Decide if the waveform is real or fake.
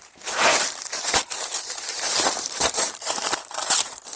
fake